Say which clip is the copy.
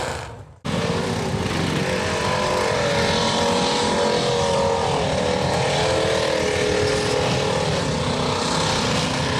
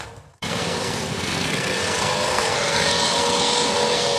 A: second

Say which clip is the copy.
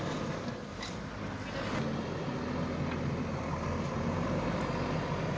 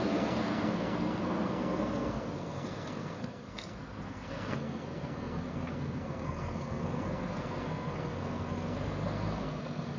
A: second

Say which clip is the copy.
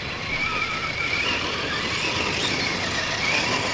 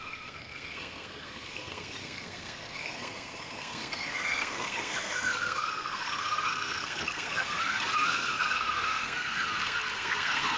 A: second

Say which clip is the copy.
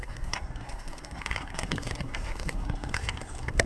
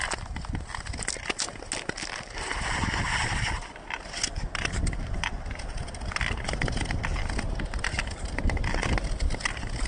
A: first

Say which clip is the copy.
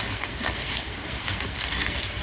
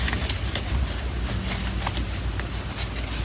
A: first